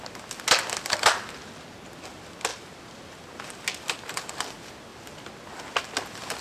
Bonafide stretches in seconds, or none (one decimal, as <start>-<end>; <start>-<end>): 0.0-2.5; 4.3-6.4